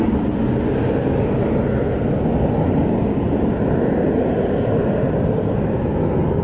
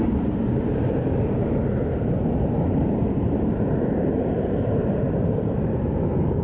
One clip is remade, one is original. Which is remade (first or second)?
second